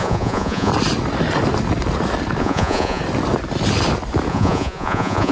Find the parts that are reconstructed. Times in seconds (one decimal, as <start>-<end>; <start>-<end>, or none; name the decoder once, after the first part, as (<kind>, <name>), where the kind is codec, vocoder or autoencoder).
0.0-0.7 (vocoder, Vocos); 2.4-3.0; 4.3-5.3